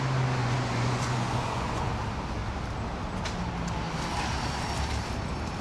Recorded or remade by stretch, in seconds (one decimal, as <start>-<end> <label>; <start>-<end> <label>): 0.0-0.4 recorded; 0.4-1.9 remade; 1.9-5.6 recorded